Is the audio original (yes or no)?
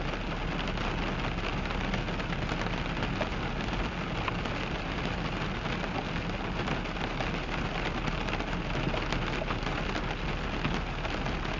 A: yes